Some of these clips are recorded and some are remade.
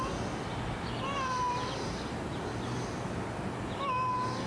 recorded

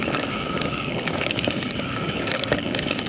remade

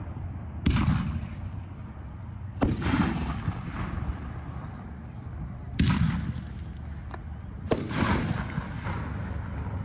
recorded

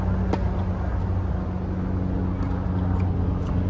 recorded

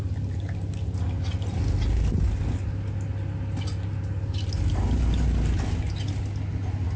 recorded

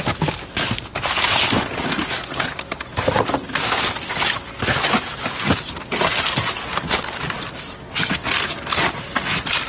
recorded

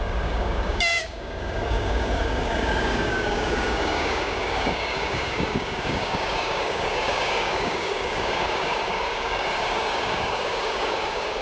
remade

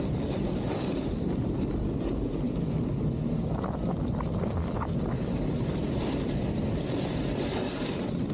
recorded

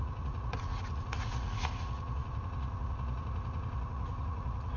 remade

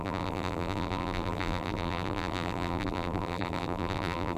remade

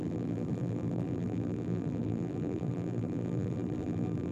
remade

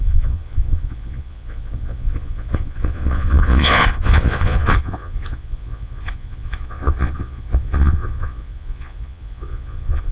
remade